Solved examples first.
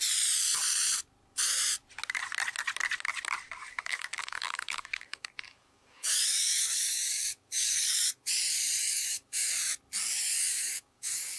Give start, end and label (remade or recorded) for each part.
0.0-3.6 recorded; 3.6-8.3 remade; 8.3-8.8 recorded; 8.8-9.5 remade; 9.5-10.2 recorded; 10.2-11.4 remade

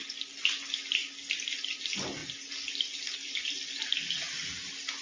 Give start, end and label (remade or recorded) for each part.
0.0-5.0 recorded

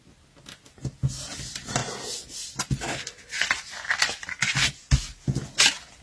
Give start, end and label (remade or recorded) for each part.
0.0-6.0 recorded

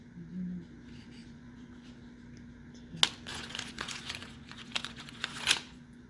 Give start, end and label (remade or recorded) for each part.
0.0-1.2 recorded; 1.2-1.9 remade; 1.9-3.3 recorded; 3.3-6.1 remade

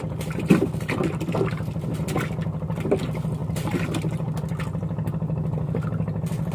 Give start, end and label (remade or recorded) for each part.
0.0-6.5 recorded

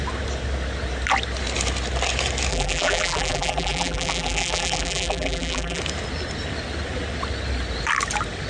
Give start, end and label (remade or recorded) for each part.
0.0-2.5 recorded; 2.5-5.8 remade; 5.8-8.5 recorded

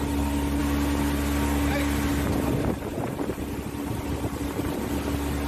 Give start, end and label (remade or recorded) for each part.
0.0-5.5 recorded